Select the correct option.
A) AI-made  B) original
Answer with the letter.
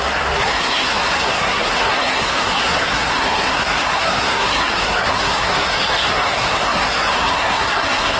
A